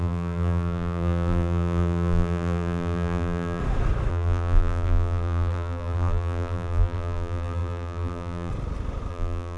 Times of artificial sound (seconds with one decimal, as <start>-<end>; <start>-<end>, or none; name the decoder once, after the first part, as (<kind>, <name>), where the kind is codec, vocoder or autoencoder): 0.0-3.6 (vocoder, BigVGAN v2); 4.1-8.5; 9.1-9.6